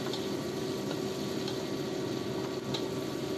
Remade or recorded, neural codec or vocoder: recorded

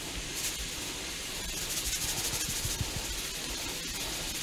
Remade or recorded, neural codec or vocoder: recorded